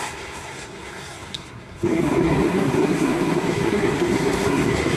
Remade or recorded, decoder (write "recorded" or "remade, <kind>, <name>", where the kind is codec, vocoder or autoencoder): remade, codec, SNAC